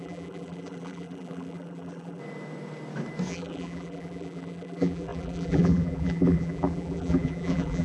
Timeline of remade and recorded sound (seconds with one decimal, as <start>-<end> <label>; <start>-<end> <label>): 0.0-2.2 remade; 2.2-3.3 recorded; 3.3-7.8 remade